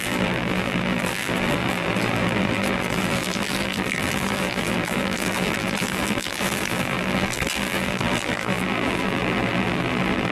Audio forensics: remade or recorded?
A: remade